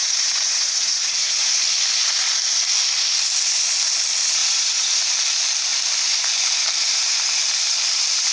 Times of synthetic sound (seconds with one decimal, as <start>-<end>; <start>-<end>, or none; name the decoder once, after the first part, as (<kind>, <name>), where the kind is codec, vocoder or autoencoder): 0.0-1.5 (vocoder, Vocos); 4.4-5.1